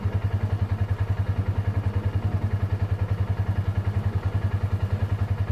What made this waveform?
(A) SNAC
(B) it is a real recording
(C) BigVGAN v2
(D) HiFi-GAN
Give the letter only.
B